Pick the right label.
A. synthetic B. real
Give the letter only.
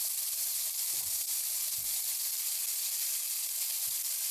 B